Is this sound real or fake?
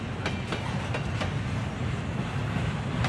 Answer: real